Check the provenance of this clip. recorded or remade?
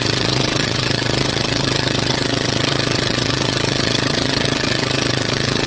remade